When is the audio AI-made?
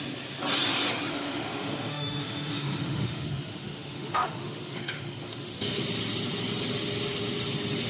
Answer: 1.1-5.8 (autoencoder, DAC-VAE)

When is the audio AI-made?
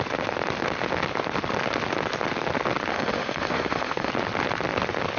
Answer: 2.9-4.1 (autoencoder, DAC-VAE)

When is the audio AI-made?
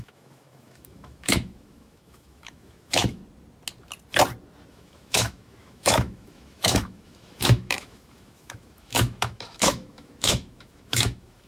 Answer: 0.0-3.2 (autoencoder, DAC-VAE); 4.7-11.5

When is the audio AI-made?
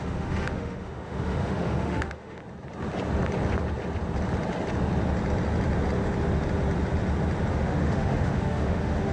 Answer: 0.0-2.4 (autoencoder, DAC-VAE); 7.5-9.1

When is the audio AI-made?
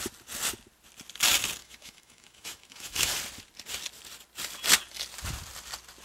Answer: 1.6-3.1 (autoencoder, DAC-VAE)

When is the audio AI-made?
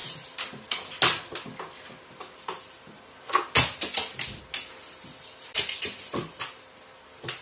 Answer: none